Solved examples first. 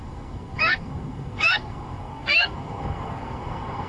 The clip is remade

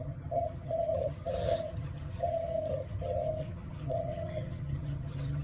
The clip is remade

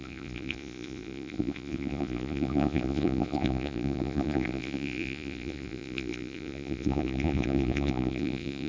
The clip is remade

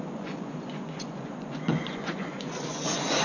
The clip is remade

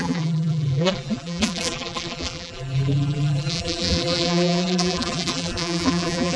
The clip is remade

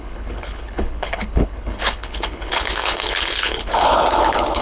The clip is remade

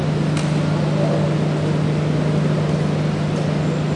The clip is recorded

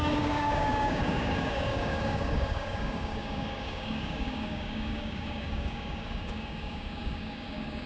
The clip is remade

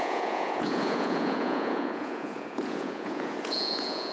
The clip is remade